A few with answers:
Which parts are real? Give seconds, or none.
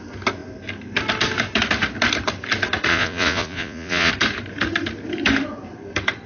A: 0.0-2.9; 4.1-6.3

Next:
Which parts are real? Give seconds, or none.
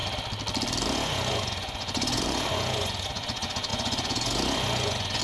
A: 0.0-0.9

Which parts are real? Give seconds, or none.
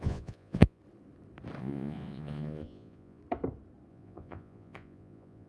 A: 0.8-1.6; 3.2-3.9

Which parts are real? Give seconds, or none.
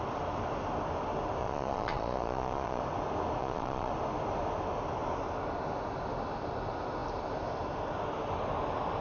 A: 0.0-1.4; 2.8-3.4; 3.9-9.0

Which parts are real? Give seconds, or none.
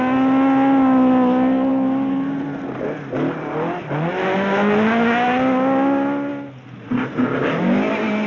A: 0.0-8.3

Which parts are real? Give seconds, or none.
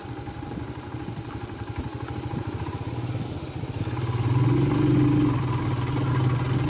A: 0.0-6.7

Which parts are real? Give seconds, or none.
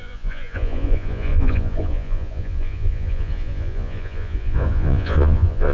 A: none